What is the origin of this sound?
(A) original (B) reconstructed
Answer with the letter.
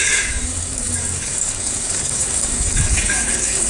B